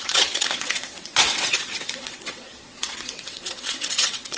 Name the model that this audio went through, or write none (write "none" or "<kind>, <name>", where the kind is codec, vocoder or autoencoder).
vocoder, WaveNeXt